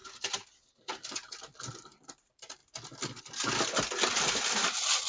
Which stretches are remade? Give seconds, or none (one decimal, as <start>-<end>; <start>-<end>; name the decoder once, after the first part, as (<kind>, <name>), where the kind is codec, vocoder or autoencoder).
0.8-2.6 (vocoder, BigVGAN v2); 3.2-5.1